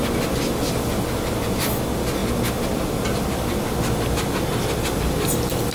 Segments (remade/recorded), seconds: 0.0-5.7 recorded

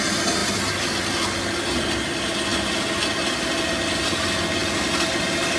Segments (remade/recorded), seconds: 0.0-5.6 recorded

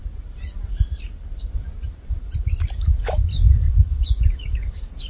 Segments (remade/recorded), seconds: 0.0-3.3 recorded; 3.3-5.1 remade